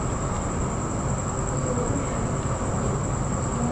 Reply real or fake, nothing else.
real